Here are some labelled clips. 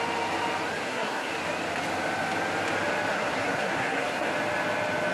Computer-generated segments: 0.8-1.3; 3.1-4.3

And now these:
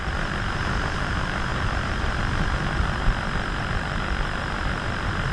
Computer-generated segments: none

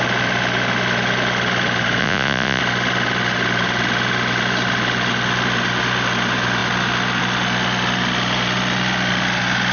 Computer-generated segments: 2.0-2.6

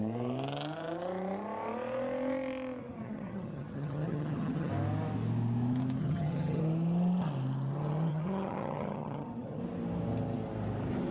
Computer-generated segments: 2.8-4.7; 6.0-6.6; 8.1-9.6

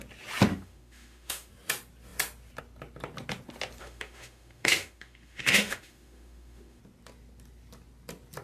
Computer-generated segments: 0.5-1.5; 3.8-6.8

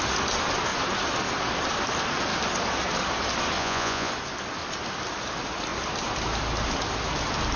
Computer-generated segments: 3.6-4.1

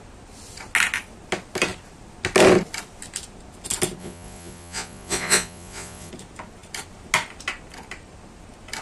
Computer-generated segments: 4.0-6.1